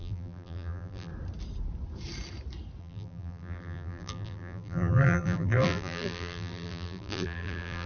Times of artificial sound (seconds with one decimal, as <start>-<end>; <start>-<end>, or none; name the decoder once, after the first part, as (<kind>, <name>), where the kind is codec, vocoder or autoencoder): 0.0-1.1 (vocoder, BigVGAN v2); 2.8-7.9